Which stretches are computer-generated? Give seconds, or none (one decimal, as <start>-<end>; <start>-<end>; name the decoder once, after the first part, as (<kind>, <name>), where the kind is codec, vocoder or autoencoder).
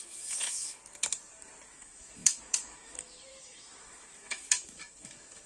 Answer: 0.0-0.8 (autoencoder, DAC-VAE); 1.7-5.5